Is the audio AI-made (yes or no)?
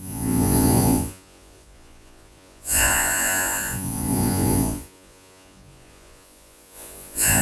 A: yes